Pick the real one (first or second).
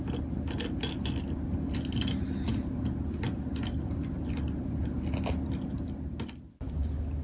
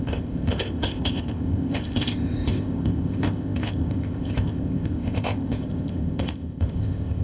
first